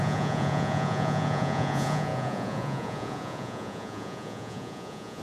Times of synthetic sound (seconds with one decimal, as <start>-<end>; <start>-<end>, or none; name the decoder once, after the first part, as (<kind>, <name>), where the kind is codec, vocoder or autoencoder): 0.0-5.2 (vocoder, Vocos)